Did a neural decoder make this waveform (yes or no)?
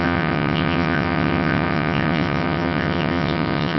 yes